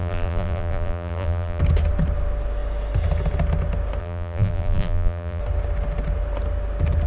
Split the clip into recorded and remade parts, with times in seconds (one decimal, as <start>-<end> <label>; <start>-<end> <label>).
0.0-1.6 remade; 1.6-4.0 recorded; 4.0-5.4 remade; 5.4-7.1 recorded